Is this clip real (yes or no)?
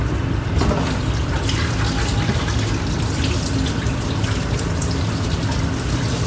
yes